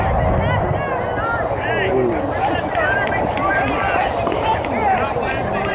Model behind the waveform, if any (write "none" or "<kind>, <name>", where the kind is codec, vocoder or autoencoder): none